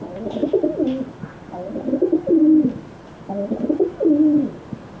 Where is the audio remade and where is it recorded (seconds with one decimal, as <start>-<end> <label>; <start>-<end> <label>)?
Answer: 0.0-5.0 recorded